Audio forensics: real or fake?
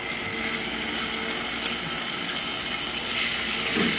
real